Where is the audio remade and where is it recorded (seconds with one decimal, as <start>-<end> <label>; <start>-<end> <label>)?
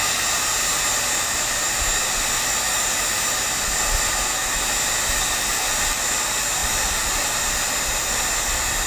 0.0-6.6 recorded; 6.6-7.8 remade; 7.8-8.9 recorded